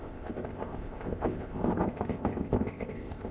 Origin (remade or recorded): remade